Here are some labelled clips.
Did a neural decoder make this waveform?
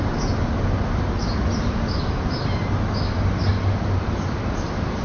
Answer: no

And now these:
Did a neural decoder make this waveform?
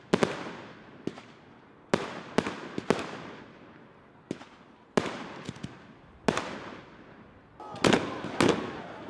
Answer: no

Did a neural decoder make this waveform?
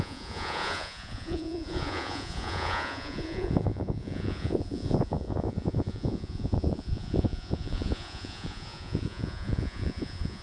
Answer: yes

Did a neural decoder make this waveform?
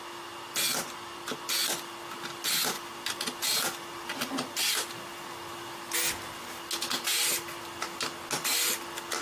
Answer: no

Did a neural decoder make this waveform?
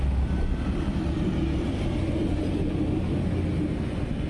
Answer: no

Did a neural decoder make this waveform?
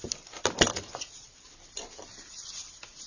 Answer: no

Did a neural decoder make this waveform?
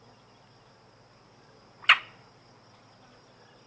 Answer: no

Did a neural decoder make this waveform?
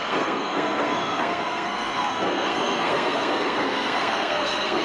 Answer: yes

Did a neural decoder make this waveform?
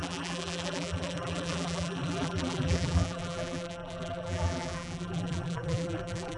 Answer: yes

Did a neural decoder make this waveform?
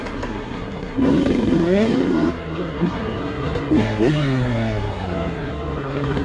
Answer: yes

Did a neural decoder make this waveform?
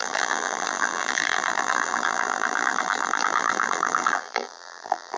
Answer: yes